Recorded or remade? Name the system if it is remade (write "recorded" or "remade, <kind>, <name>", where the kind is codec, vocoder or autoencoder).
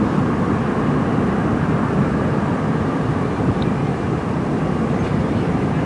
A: remade, vocoder, BigVGAN v2